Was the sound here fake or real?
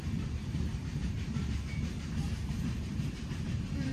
fake